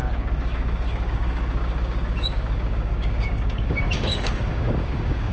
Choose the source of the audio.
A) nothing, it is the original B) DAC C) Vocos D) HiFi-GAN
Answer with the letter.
B